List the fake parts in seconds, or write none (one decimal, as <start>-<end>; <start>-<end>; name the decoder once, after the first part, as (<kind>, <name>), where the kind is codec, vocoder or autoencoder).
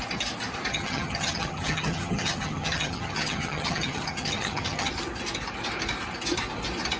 0.7-4.9 (vocoder, HiFi-GAN)